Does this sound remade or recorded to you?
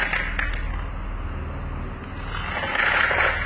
recorded